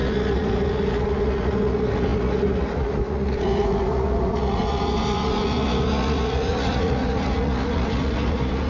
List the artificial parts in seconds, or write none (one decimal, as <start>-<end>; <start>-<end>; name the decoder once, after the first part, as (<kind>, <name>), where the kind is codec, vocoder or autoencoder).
0.0-8.7 (vocoder, Vocos)